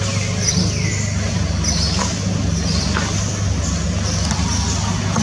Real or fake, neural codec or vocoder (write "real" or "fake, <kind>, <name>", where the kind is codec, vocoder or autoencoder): real